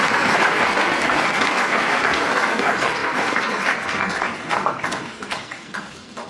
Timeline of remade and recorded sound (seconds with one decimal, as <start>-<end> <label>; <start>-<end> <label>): 0.0-6.3 remade